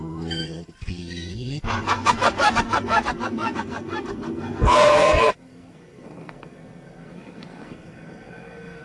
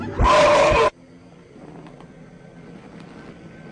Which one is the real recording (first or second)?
second